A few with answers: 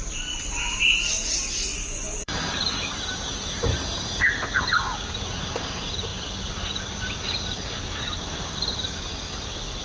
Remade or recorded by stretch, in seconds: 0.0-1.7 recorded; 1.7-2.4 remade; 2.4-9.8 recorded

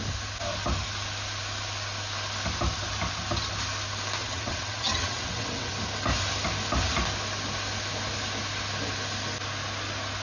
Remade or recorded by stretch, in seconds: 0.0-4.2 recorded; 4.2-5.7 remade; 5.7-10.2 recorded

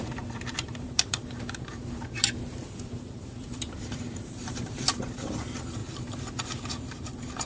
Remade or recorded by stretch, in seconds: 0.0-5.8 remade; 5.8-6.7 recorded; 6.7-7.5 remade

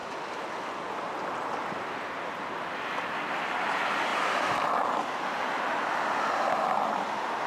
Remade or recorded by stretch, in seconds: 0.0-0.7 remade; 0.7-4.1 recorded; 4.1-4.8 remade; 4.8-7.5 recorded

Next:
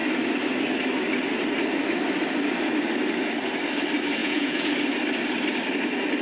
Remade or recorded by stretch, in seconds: 0.0-4.2 recorded; 4.2-4.7 remade; 4.7-6.2 recorded

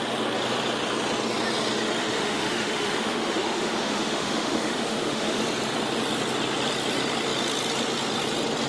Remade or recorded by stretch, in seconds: 0.0-2.0 recorded; 2.0-5.4 remade; 5.4-8.7 recorded

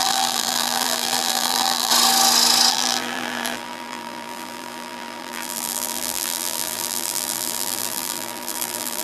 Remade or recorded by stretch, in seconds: 0.0-1.9 remade; 1.9-2.7 recorded; 2.7-9.0 remade

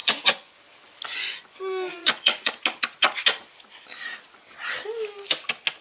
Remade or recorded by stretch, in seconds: 0.0-0.6 remade; 0.6-1.1 recorded; 1.1-2.5 remade; 2.5-5.8 recorded